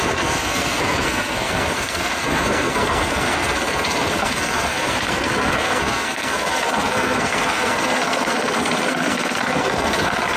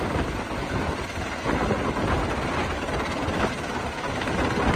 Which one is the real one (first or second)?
second